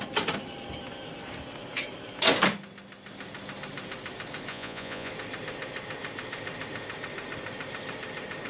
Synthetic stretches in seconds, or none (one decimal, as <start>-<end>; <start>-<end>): 4.5-5.1

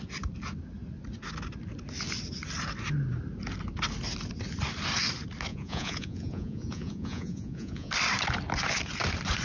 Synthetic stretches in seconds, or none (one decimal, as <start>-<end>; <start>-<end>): 5.5-7.9

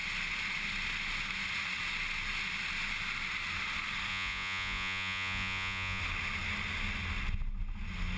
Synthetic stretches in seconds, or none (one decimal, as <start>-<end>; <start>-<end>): 4.1-6.0

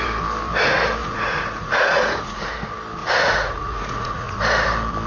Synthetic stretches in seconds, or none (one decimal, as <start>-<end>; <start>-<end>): 1.0-2.5; 3.0-4.4

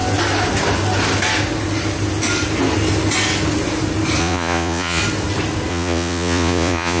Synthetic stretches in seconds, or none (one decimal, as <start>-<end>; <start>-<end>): 4.2-5.0; 5.7-7.0

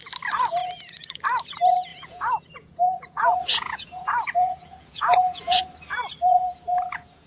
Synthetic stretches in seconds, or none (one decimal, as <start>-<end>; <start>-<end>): 0.6-1.2; 1.9-5.6; 6.4-7.3